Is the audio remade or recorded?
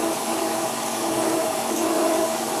remade